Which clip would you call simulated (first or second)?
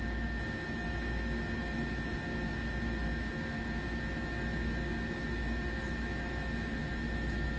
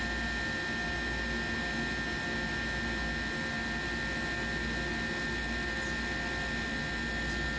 first